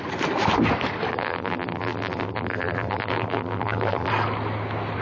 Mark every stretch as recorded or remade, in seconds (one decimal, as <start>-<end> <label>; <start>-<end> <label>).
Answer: 0.0-1.1 recorded; 1.1-4.1 remade; 4.1-5.0 recorded